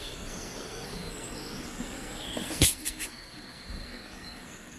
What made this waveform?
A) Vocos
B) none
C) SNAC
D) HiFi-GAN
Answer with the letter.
C